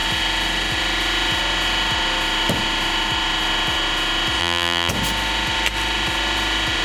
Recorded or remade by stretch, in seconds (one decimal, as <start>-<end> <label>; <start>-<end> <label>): 0.0-4.4 recorded; 4.4-4.9 remade; 4.9-6.8 recorded